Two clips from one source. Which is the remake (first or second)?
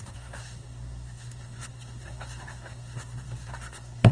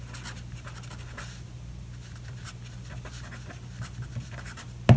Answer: first